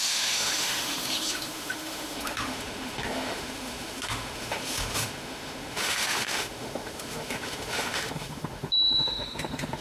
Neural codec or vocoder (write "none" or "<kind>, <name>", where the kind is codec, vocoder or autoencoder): autoencoder, DAC-VAE